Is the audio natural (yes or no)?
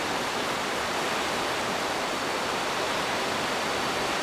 yes